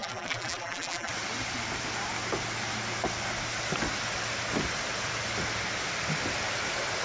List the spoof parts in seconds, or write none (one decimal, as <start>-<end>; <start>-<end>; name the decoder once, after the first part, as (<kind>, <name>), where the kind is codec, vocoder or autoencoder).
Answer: 0.0-1.1 (vocoder, BigVGAN v2)